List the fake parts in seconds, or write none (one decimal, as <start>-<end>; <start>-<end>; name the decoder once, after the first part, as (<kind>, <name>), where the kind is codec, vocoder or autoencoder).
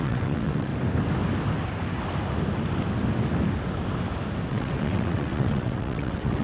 0.0-0.7 (vocoder, WaveNeXt); 4.5-6.4